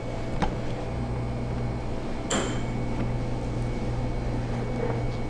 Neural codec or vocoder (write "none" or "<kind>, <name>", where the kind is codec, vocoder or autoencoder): none